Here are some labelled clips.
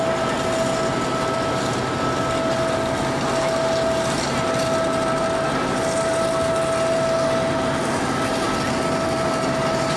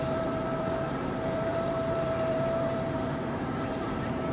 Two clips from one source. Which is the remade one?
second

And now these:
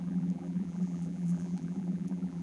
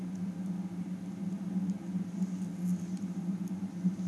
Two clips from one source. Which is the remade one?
first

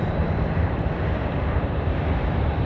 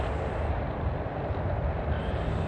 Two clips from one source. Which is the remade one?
first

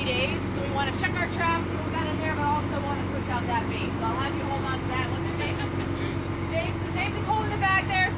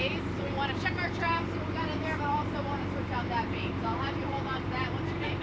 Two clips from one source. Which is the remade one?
second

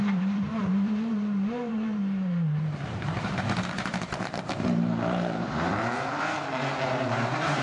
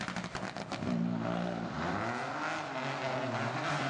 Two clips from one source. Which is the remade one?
first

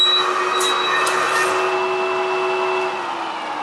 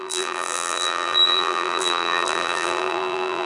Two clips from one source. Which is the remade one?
second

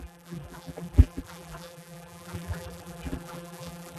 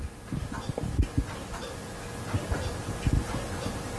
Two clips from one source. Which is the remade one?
first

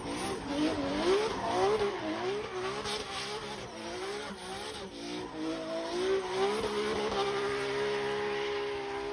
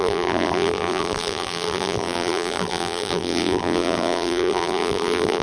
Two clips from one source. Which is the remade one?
second